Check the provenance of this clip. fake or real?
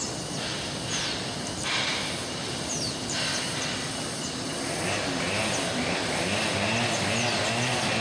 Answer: real